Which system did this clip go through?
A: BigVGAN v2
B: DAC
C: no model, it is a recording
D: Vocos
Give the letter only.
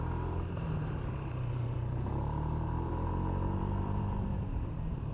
A